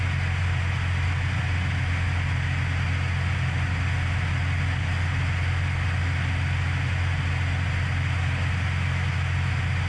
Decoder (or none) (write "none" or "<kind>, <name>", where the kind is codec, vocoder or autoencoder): none